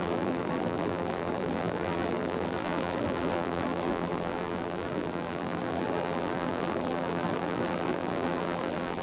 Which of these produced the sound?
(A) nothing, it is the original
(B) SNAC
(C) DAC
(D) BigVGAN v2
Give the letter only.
D